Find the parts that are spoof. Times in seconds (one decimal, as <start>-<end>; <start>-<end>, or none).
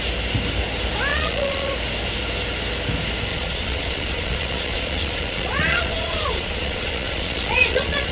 1.1-1.7; 3.3-8.1